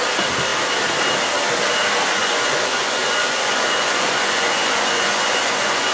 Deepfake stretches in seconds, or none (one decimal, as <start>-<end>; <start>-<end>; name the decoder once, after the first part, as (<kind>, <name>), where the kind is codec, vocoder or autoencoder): 2.2-5.9 (vocoder, Vocos)